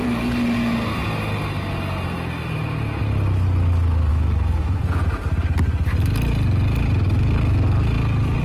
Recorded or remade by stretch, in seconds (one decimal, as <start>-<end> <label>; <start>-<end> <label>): 0.0-4.1 recorded; 4.1-4.8 remade; 4.8-8.4 recorded